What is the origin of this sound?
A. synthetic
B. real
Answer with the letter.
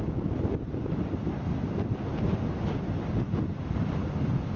B